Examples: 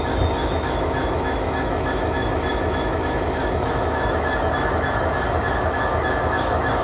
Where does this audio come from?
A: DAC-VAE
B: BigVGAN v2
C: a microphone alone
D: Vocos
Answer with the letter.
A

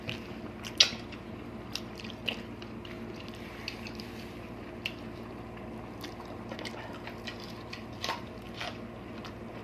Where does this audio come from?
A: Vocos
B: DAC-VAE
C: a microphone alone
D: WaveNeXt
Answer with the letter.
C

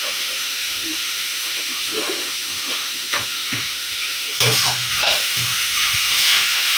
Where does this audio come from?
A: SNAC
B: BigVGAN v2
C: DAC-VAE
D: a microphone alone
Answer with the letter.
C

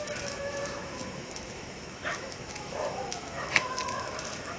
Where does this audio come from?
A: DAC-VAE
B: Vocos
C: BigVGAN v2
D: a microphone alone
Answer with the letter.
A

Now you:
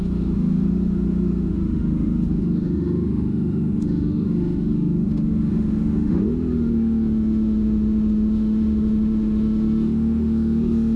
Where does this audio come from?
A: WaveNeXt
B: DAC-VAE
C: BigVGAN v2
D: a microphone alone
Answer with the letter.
B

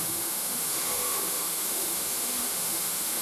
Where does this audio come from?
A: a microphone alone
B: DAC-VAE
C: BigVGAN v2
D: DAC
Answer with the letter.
B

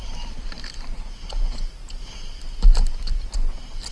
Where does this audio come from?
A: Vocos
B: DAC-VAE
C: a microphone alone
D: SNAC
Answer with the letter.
C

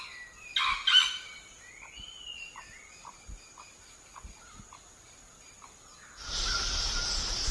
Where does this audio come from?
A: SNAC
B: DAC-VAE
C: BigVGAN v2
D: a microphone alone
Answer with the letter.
D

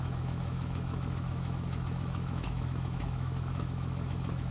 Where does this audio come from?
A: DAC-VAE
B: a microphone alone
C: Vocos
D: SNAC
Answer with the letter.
A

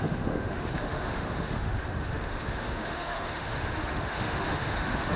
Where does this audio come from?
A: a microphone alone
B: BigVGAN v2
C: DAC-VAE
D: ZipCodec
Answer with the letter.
C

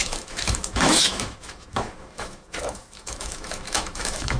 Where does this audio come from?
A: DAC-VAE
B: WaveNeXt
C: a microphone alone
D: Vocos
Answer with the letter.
A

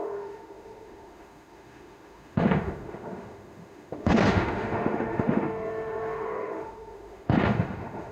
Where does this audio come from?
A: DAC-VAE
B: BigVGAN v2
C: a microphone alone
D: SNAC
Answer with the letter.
A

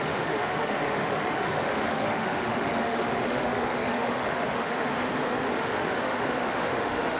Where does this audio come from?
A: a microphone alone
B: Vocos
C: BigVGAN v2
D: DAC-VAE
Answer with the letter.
D